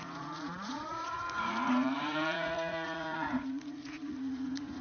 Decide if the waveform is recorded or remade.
remade